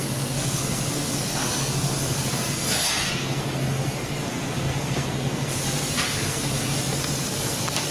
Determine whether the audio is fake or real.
fake